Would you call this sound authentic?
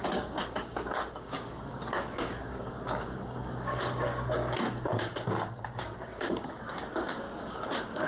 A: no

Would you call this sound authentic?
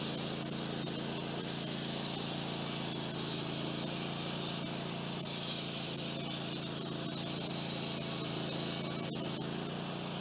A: yes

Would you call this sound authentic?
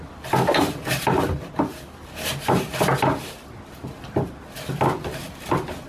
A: yes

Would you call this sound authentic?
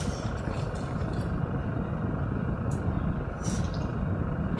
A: yes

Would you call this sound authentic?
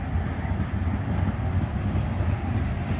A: yes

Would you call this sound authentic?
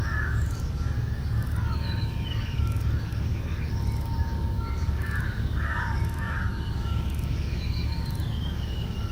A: no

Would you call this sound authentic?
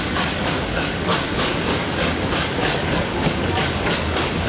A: no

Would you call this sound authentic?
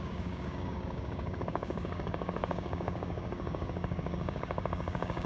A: no